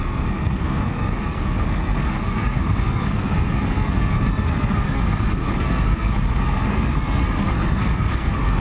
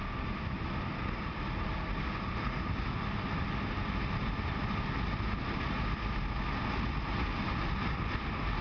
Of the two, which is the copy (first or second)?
first